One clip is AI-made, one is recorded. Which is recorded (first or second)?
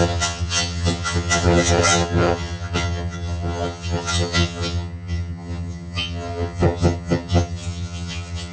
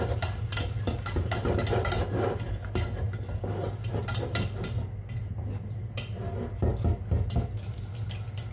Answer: second